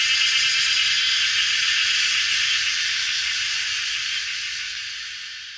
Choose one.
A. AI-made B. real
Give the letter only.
A